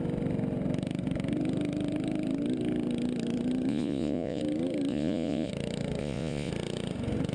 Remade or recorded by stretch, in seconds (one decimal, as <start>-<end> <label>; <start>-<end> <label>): 0.0-3.7 recorded; 3.7-4.4 remade; 4.4-4.9 recorded; 4.9-5.5 remade; 5.5-6.0 recorded; 6.0-6.5 remade; 6.5-7.3 recorded